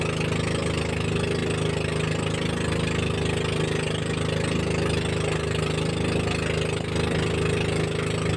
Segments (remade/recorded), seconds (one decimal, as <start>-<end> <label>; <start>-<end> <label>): 0.0-8.4 recorded